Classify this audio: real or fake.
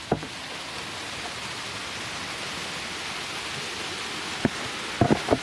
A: real